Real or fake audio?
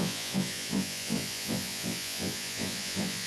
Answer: fake